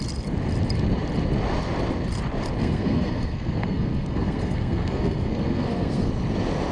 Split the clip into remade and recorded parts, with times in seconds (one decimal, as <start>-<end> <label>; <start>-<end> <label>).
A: 0.0-2.6 recorded; 2.6-6.1 remade; 6.1-6.7 recorded